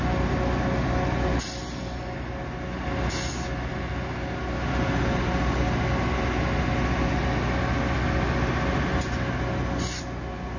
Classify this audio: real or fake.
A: real